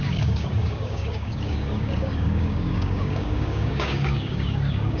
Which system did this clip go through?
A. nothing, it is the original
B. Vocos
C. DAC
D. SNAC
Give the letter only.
C